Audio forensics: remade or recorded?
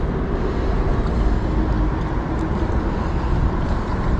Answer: recorded